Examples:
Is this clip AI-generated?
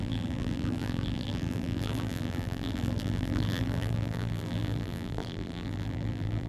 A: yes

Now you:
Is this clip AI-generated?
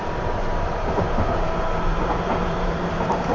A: yes